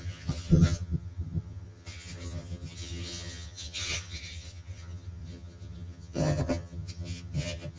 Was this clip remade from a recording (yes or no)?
yes